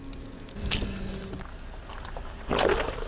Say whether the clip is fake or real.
real